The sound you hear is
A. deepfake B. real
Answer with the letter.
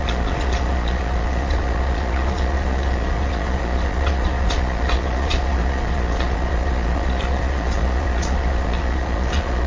A